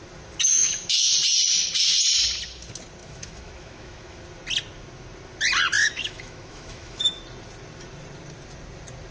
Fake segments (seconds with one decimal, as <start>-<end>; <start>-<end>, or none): 0.5-1.1; 3.0-4.2; 5.8-7.2